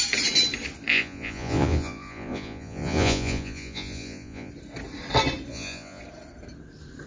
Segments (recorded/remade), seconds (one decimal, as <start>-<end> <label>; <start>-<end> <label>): 0.0-0.9 recorded; 0.9-4.5 remade; 4.5-5.5 recorded; 5.5-6.0 remade; 6.0-7.1 recorded